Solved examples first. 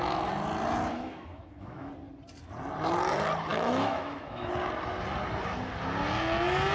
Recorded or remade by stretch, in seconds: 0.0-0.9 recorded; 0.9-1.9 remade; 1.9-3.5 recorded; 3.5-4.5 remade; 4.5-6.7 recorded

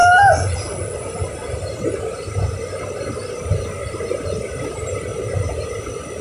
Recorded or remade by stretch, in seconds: 0.0-6.2 recorded

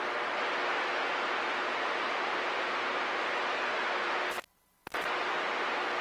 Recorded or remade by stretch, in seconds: 0.0-0.9 recorded; 0.9-4.2 remade; 4.2-4.8 recorded; 4.8-5.5 remade; 5.5-6.0 recorded